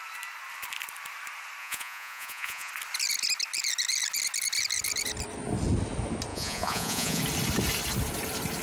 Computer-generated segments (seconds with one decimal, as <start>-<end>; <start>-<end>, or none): 1.6-2.7; 6.3-7.2